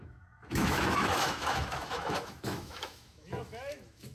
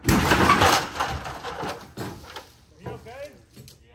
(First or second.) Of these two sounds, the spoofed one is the first